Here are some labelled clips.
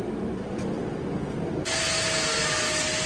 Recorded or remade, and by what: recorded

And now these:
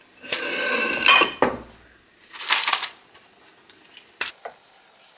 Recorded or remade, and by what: recorded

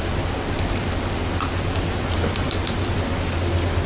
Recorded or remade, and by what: recorded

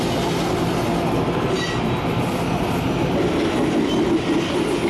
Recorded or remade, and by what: recorded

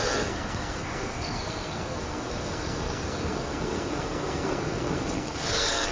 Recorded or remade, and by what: remade, codec, SNAC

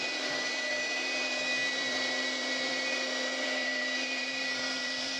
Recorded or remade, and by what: remade, vocoder, BigVGAN v2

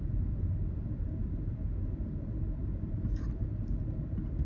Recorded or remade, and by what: remade, vocoder, BigVGAN v2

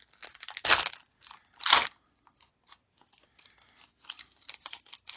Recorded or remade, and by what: recorded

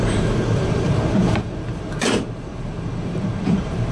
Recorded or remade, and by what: remade, vocoder, BigVGAN v2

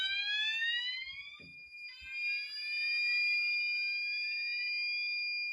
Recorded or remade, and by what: recorded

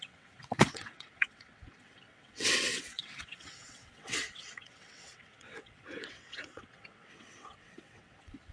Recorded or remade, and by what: remade, vocoder, WaveNeXt